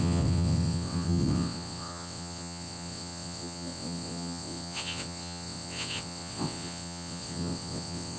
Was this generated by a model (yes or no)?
yes